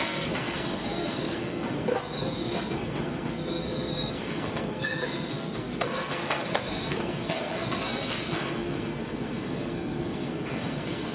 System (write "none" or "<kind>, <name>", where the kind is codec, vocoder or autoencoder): codec, SNAC